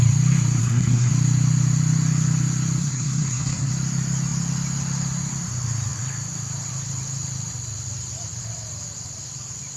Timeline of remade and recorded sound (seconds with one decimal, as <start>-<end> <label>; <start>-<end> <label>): 0.0-0.6 recorded; 0.6-1.1 remade; 1.1-2.8 recorded; 2.8-3.7 remade; 3.7-9.8 recorded